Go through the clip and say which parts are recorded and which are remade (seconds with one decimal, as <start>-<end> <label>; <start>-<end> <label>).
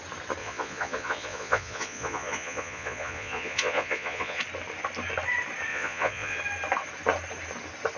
0.0-0.4 recorded; 0.4-4.4 remade; 4.4-5.7 recorded; 5.7-6.4 remade; 6.4-8.0 recorded